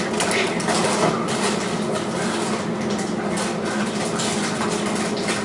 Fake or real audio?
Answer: real